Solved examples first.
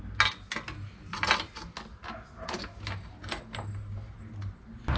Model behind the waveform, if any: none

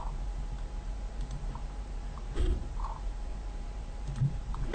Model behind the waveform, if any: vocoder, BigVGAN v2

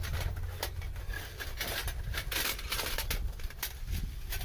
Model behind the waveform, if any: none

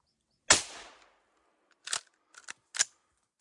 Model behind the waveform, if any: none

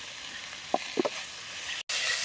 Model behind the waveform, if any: none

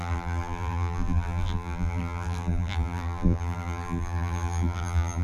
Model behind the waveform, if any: vocoder, BigVGAN v2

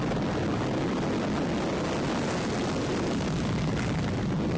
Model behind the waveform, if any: none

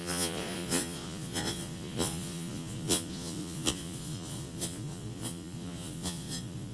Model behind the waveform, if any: vocoder, Vocos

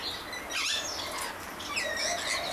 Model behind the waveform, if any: none